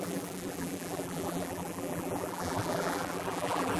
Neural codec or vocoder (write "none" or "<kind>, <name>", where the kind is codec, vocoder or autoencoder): vocoder, BigVGAN v2